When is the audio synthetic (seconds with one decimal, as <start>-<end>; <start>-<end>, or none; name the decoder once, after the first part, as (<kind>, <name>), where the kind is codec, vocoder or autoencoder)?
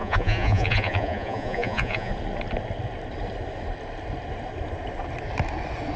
0.0-2.1 (vocoder, Vocos)